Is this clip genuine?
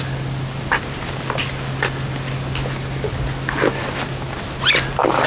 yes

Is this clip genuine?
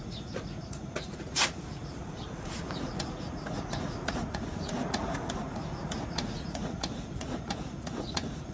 no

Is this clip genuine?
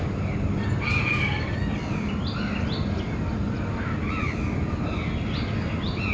yes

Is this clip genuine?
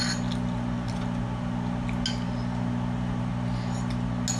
yes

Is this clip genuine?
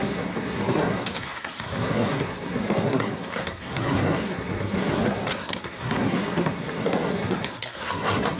no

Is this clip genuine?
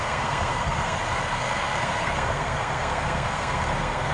no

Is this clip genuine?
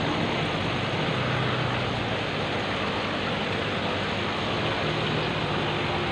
yes